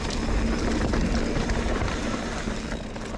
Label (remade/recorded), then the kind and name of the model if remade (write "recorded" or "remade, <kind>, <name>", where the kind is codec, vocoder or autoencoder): recorded